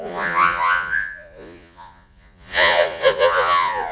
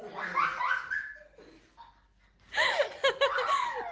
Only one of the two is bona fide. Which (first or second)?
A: second